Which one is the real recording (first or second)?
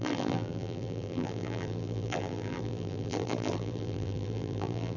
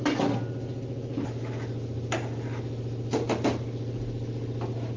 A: second